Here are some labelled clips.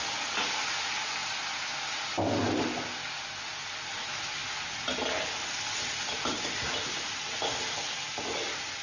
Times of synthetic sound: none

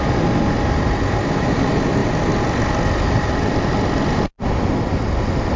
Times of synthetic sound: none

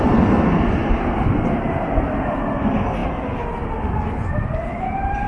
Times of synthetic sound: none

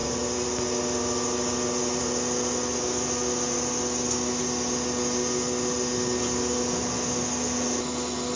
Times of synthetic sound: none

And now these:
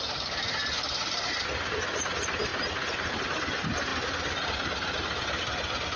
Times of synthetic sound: none

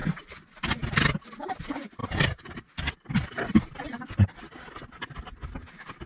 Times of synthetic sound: none